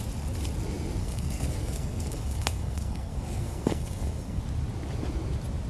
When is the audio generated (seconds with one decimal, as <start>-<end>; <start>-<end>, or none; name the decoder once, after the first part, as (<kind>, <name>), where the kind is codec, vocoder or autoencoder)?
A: 1.0-4.4 (codec, SNAC)